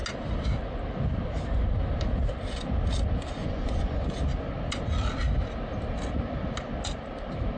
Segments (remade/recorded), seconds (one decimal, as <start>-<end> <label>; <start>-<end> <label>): 0.0-3.4 recorded; 3.4-4.1 remade; 4.1-7.6 recorded